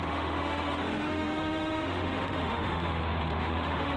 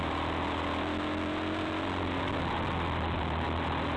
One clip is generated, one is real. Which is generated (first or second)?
first